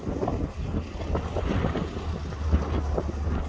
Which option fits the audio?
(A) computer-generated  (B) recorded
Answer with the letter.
B